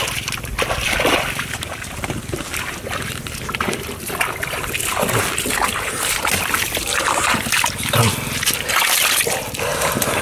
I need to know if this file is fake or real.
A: real